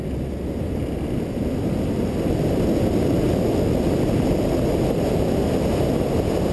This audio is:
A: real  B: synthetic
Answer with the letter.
A